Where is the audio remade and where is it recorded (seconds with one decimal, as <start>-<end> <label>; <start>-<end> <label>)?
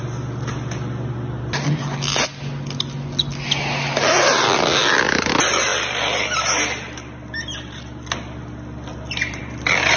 0.0-10.0 recorded